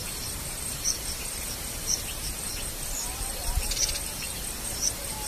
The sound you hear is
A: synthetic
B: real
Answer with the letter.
A